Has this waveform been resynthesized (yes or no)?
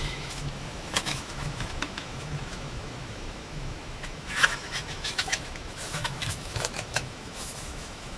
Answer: yes